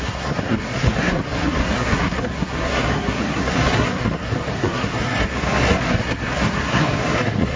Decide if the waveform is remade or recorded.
remade